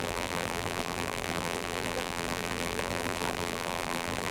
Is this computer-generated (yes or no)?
yes